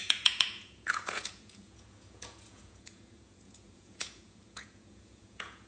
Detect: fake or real fake